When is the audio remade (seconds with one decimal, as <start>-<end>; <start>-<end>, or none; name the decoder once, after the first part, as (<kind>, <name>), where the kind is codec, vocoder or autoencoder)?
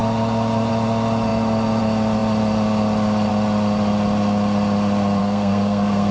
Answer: 5.2-6.1 (codec, SNAC)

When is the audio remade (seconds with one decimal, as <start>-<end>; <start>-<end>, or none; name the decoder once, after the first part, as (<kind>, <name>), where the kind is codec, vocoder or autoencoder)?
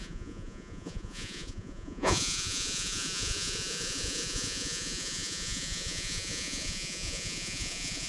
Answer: 0.0-8.1 (vocoder, Vocos)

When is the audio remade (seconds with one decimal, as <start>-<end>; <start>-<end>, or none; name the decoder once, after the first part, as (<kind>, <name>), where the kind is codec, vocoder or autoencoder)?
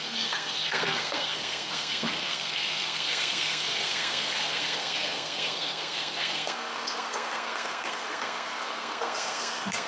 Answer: 0.0-9.9 (codec, SNAC)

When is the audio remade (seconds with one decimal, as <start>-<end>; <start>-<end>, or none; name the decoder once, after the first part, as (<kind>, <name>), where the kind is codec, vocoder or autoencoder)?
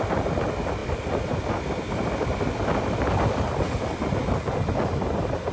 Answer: 0.8-4.1 (vocoder, BigVGAN v2)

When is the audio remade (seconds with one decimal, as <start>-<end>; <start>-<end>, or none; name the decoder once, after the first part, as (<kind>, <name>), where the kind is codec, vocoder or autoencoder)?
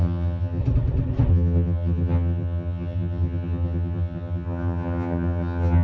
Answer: 0.0-0.6 (vocoder, HiFi-GAN); 1.3-5.8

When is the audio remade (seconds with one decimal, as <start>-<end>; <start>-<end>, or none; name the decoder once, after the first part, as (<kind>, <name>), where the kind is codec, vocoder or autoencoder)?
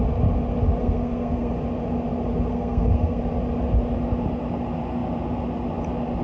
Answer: 0.8-1.5 (codec, SNAC); 2.5-3.2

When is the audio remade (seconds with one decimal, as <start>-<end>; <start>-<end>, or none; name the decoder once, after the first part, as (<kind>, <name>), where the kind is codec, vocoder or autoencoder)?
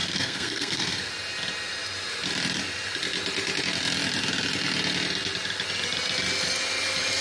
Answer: 0.0-1.1 (codec, SNAC)